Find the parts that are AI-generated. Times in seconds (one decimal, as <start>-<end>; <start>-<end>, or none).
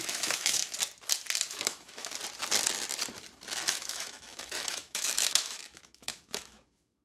0.0-0.6; 1.5-2.1; 3.7-7.0